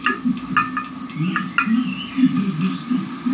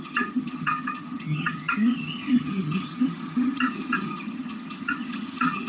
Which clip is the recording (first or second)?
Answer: first